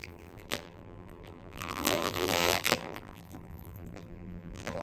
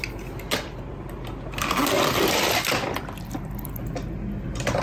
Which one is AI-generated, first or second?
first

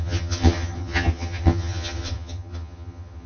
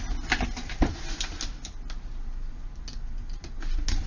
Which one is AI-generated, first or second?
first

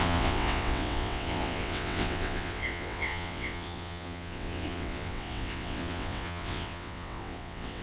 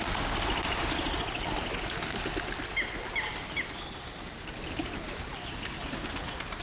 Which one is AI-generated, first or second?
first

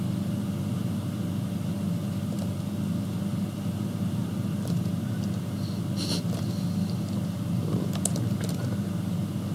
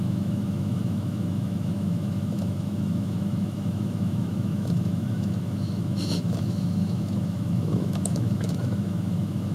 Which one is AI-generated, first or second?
second